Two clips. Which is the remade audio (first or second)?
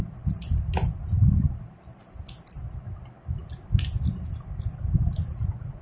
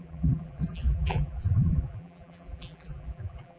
second